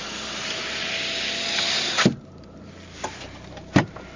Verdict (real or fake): real